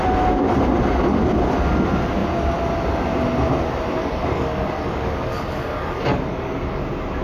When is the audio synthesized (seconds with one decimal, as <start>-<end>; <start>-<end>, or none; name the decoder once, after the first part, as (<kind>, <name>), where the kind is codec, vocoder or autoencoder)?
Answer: 4.0-6.8 (codec, DAC)